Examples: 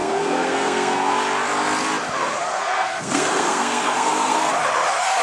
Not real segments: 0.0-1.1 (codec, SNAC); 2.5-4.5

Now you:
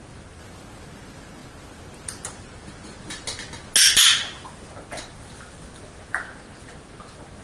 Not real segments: none

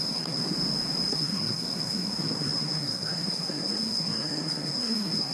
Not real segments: 0.0-0.4 (codec, SNAC); 1.1-5.3

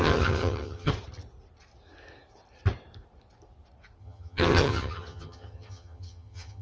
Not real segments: 0.0-0.9 (vocoder, HiFi-GAN); 4.0-6.6

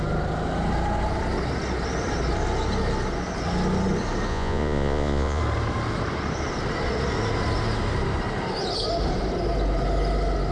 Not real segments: 4.3-5.4 (vocoder, Vocos)

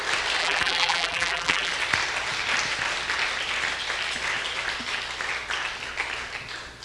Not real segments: 0.4-1.7 (vocoder, BigVGAN v2)